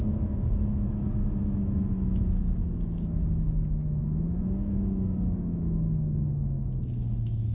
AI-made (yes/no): yes